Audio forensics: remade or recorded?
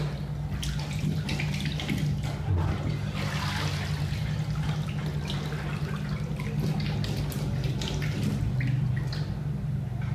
recorded